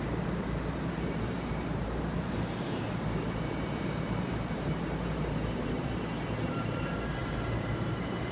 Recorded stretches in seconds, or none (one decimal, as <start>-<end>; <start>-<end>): none